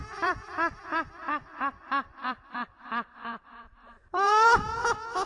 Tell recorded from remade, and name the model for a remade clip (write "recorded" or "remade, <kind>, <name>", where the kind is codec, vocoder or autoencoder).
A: remade, vocoder, BigVGAN v2